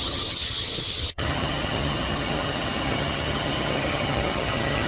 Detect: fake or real fake